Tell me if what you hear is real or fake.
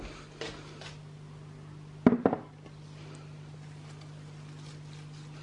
real